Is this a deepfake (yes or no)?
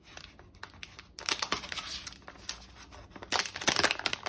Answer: no